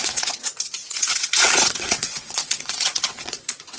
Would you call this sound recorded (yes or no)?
no